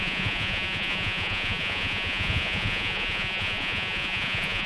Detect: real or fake fake